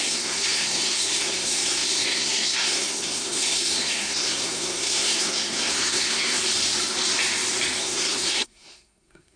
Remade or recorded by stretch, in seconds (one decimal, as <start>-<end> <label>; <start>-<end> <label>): 0.0-6.4 remade; 6.4-7.8 recorded; 7.8-9.4 remade